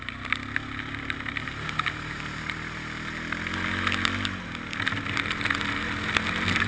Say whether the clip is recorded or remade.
recorded